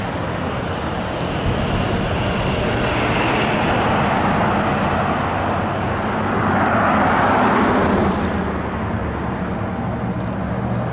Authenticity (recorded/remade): recorded